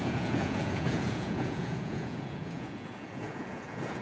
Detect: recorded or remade remade